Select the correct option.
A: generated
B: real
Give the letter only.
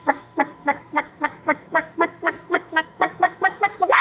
A